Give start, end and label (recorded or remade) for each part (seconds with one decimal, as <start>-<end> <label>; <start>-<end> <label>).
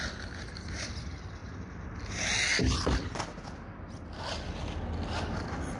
0.0-5.8 recorded